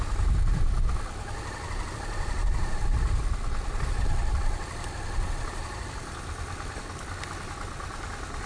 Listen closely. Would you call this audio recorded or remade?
recorded